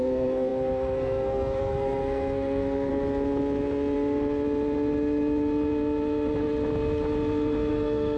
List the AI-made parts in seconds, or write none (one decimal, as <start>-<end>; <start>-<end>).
0.0-2.9; 7.7-8.2